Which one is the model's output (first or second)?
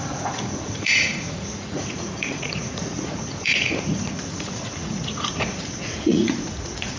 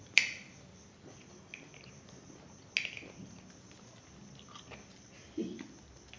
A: first